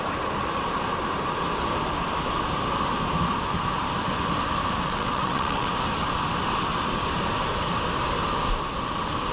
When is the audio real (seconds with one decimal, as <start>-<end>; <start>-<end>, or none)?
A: 0.0-4.8; 5.7-9.3